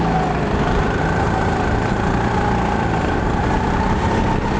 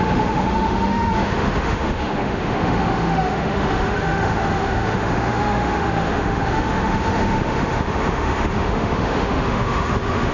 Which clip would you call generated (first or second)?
second